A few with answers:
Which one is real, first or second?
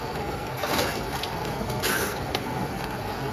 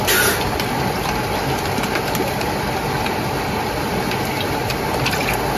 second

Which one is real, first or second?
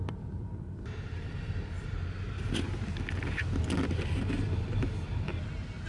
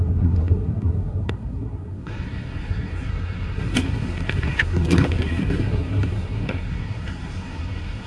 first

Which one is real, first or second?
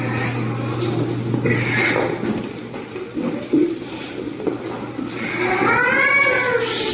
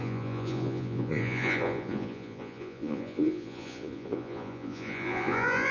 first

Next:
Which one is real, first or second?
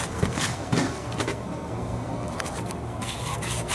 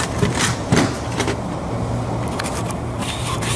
second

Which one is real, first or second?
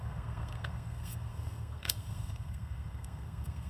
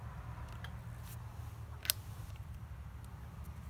second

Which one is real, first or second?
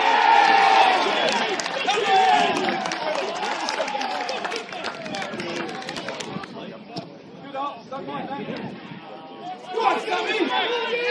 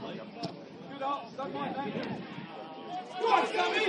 second